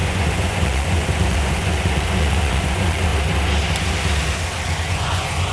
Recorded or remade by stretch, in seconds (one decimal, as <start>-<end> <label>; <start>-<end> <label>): 0.0-3.1 remade; 3.1-4.9 recorded; 4.9-5.5 remade